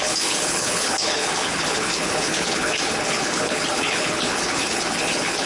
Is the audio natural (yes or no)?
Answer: no